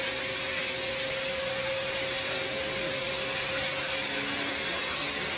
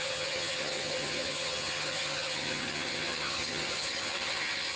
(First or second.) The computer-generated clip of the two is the second